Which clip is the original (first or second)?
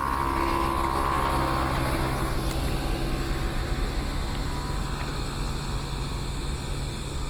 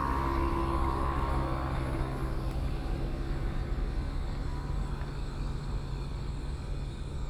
first